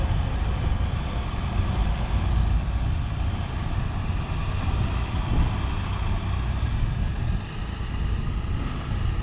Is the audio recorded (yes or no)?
yes